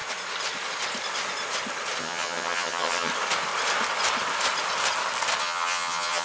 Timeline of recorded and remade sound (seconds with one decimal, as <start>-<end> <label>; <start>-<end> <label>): 0.0-2.0 recorded; 2.0-3.1 remade; 3.1-5.4 recorded; 5.4-6.2 remade

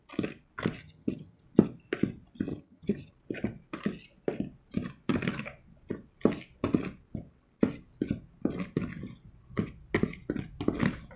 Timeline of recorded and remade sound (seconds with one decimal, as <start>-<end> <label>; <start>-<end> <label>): 0.0-0.8 recorded; 0.8-1.4 remade; 1.4-2.5 recorded; 2.5-3.1 remade; 3.1-11.2 recorded

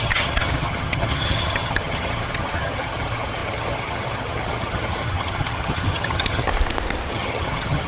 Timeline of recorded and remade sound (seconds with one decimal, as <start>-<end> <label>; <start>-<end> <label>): 0.0-6.5 remade; 6.5-7.1 recorded; 7.1-7.9 remade

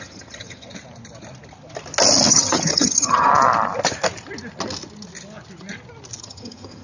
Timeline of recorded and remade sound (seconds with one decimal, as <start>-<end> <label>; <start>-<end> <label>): 0.0-0.7 remade; 0.7-2.3 recorded; 2.3-3.3 remade; 3.3-6.2 recorded; 6.2-6.8 remade